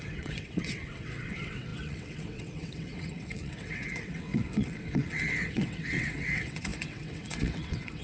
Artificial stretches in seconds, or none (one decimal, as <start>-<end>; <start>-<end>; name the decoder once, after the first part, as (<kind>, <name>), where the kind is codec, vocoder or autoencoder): 0.0-8.0 (vocoder, WaveNeXt)